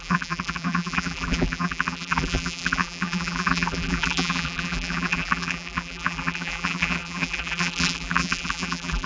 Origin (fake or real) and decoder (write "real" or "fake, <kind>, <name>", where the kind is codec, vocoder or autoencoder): fake, vocoder, BigVGAN v2